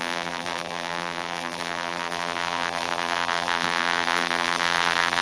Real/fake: fake